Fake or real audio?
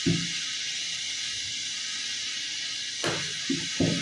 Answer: real